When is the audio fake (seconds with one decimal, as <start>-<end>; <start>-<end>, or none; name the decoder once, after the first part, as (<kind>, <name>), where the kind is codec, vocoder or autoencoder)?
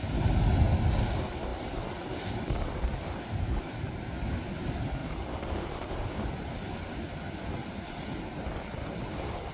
5.0-5.9 (vocoder, BigVGAN v2)